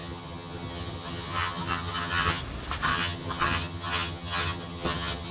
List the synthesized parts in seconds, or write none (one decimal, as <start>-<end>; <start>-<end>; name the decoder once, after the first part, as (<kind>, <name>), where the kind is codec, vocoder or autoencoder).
0.0-2.4 (vocoder, HiFi-GAN); 2.9-5.3